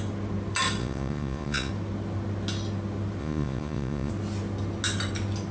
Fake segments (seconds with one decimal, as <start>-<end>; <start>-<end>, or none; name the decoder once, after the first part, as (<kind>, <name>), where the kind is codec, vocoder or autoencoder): 0.8-1.7 (vocoder, Vocos); 3.2-4.1